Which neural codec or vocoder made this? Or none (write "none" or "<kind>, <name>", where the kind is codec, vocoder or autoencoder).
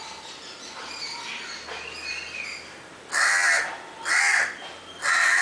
none